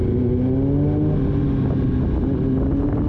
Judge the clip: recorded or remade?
recorded